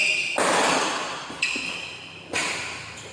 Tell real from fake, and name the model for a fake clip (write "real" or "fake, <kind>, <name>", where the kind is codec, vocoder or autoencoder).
real